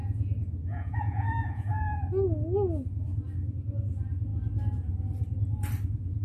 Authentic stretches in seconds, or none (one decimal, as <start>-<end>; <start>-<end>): 2.1-6.2

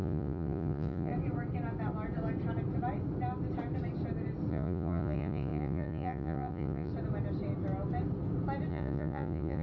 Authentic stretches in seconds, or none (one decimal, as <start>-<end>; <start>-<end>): 1.1-4.5; 6.9-8.7

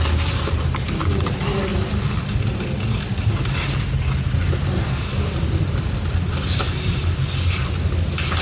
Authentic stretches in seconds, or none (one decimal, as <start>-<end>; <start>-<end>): 0.0-8.4

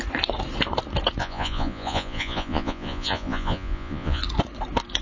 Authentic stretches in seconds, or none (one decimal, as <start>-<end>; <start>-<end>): 0.0-1.2; 4.2-5.0

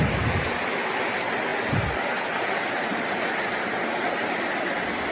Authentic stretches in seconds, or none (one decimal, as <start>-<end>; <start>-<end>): 0.0-5.1